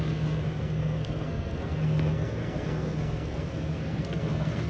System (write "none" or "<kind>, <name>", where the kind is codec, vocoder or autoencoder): codec, SNAC